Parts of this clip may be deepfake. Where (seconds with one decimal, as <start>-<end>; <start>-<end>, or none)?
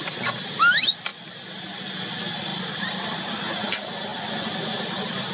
2.5-3.4